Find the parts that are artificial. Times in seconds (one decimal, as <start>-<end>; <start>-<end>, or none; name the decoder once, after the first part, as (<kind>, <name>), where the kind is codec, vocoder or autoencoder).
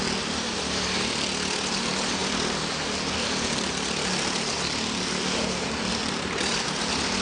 none